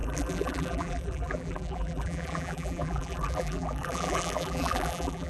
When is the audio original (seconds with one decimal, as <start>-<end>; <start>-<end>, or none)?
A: none